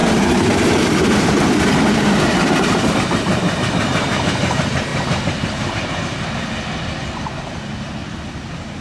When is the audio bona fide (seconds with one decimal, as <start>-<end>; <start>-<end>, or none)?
2.9-4.9; 6.0-8.8